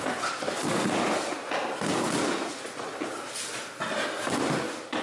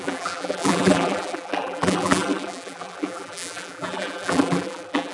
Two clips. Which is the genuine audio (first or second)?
first